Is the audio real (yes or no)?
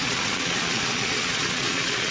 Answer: no